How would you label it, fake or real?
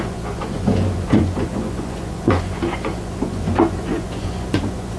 fake